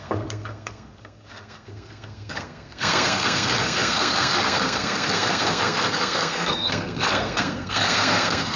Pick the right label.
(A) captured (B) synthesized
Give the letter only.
B